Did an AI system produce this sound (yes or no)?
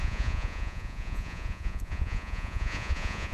yes